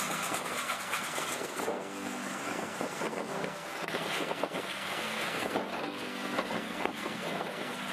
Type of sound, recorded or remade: remade